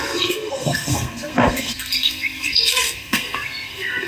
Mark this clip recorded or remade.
remade